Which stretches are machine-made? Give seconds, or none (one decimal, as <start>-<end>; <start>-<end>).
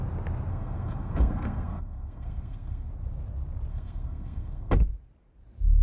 0.5-2.9; 3.7-4.7